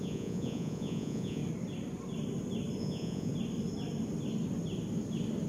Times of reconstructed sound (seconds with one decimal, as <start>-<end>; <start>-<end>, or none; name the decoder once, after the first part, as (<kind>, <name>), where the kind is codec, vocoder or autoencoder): 0.0-1.4 (vocoder, Vocos); 2.8-3.3